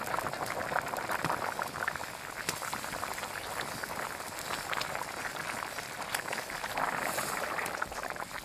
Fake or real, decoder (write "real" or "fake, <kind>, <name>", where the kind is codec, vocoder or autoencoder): real